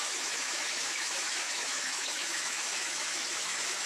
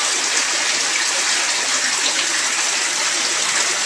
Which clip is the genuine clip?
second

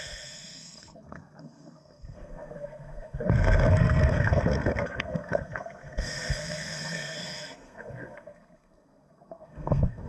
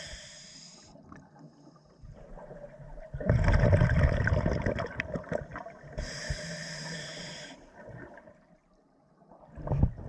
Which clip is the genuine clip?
second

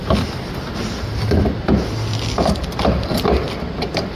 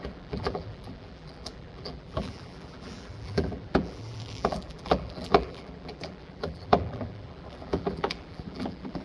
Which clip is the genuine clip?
first